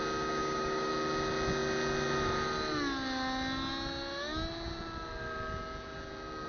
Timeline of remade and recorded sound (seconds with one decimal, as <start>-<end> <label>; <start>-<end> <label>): 0.0-0.4 recorded; 0.4-0.9 remade; 0.9-6.5 recorded